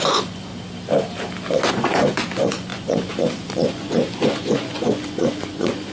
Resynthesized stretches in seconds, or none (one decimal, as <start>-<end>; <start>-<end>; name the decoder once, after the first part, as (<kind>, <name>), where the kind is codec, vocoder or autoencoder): 0.0-0.5 (vocoder, Vocos); 1.7-5.9